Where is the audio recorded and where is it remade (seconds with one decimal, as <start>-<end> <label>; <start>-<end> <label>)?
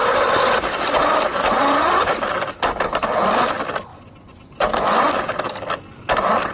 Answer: 0.0-3.9 recorded; 3.9-5.0 remade; 5.0-6.5 recorded